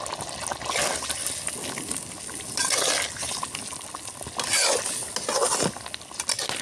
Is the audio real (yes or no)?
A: yes